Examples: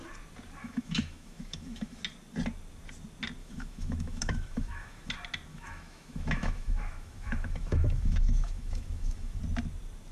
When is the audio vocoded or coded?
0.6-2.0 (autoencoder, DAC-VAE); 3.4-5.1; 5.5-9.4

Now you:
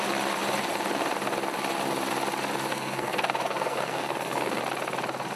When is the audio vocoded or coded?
2.7-4.6 (codec, SNAC)

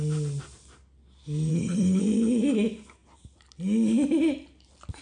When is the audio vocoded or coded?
1.5-2.0 (codec, SNAC)

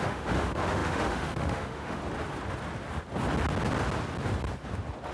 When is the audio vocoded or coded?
0.0-2.0 (autoencoder, DAC-VAE)

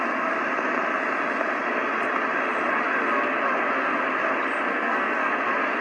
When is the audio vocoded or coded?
4.7-5.3 (codec, SNAC)

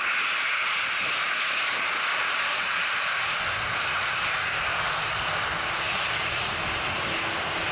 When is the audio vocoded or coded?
2.1-2.8 (vocoder, Vocos); 5.9-6.5